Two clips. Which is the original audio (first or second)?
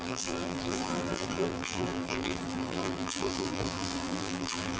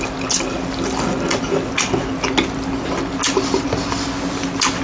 second